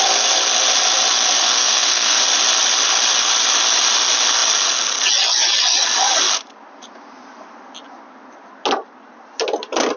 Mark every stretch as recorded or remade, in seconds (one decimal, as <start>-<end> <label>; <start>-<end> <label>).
0.0-1.4 recorded; 1.4-2.2 remade; 2.2-10.0 recorded